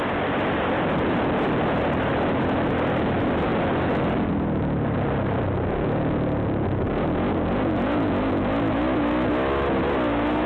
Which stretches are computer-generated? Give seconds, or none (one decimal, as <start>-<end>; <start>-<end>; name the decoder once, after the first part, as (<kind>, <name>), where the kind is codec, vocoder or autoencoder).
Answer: none